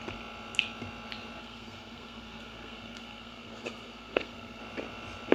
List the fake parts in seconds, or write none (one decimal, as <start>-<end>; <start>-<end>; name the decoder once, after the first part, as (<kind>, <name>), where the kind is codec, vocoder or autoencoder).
1.4-4.6 (codec, SNAC)